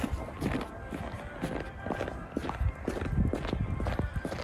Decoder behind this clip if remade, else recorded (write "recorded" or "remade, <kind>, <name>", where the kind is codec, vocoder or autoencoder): recorded